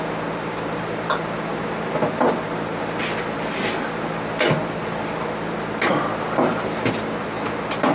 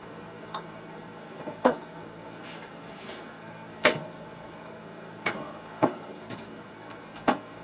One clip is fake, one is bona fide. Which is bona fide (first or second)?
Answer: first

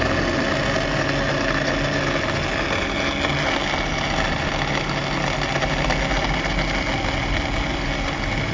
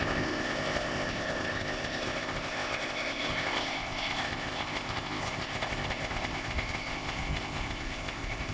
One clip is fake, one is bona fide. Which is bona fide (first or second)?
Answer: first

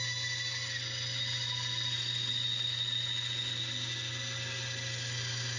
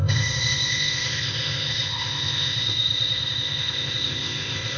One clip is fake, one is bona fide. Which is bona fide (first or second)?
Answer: first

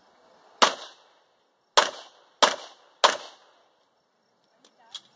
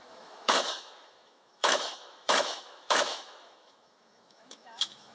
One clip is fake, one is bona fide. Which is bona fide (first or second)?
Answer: first